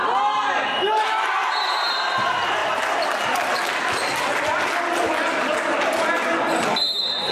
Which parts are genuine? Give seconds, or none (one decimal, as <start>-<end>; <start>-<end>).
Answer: 0.0-7.3